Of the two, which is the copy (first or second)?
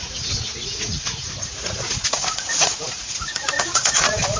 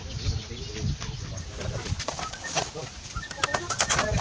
first